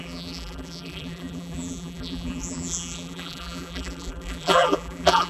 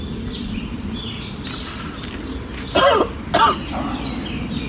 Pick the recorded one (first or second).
second